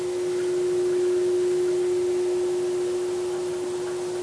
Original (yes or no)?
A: yes